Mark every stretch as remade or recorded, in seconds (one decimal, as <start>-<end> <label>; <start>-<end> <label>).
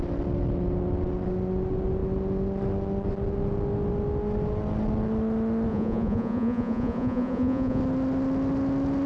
0.0-5.7 recorded; 5.7-7.8 remade; 7.8-9.1 recorded